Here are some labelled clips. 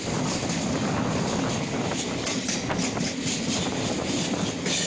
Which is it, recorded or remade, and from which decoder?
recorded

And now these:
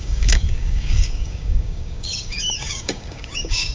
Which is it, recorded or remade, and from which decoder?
remade, codec, DAC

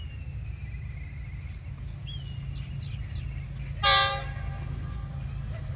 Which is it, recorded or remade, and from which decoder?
recorded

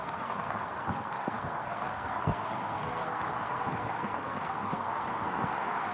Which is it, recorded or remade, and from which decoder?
remade, codec, SNAC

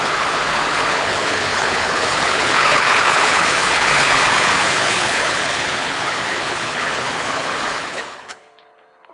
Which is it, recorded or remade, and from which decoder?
remade, codec, HILCodec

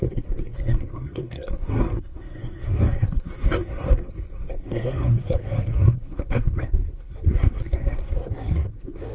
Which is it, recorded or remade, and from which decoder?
remade, codec, SNAC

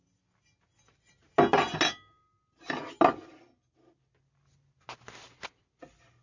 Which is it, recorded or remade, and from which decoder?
recorded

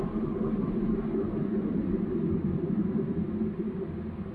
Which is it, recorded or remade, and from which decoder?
recorded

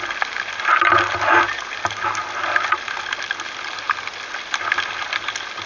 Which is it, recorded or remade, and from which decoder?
recorded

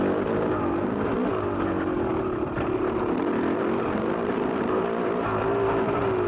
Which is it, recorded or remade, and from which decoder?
recorded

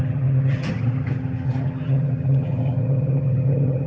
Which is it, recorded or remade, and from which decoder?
remade, vocoder, HiFi-GAN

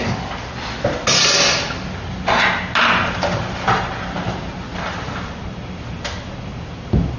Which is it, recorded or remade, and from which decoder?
recorded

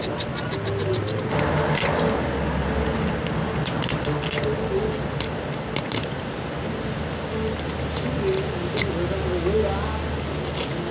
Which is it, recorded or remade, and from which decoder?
recorded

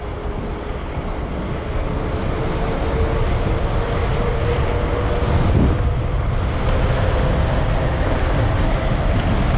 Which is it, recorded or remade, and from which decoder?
recorded